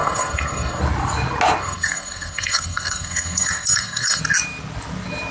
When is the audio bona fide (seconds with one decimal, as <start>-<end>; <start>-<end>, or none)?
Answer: 0.8-1.6; 4.2-5.3